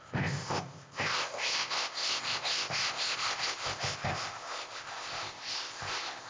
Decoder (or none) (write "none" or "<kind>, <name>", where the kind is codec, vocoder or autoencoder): codec, ZipCodec